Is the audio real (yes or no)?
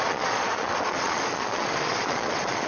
no